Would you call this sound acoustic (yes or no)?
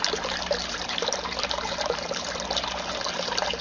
no